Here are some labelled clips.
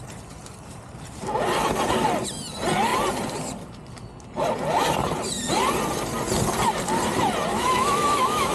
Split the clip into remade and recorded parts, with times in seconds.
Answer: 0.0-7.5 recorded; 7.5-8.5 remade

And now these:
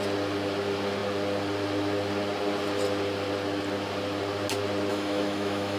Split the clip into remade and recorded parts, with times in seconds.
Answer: 0.0-4.9 recorded; 4.9-5.8 remade

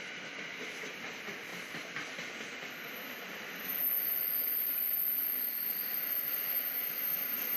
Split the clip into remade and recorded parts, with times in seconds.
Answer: 0.0-7.6 recorded

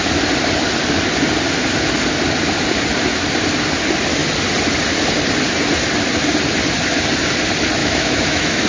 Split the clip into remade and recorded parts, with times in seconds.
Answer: 0.0-7.8 recorded; 7.8-8.7 remade

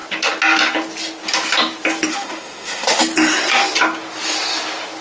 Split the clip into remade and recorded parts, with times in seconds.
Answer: 0.0-2.1 recorded; 2.1-3.0 remade; 3.0-5.0 recorded